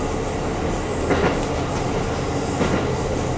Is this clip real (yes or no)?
yes